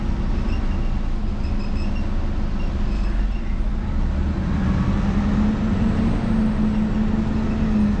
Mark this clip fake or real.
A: real